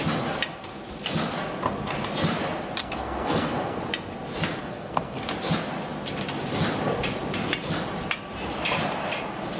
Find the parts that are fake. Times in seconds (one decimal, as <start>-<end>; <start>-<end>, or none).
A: 2.8-3.8; 4.6-5.2